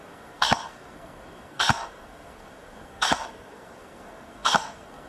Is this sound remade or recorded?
remade